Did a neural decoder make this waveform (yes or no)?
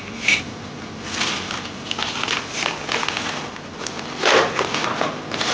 no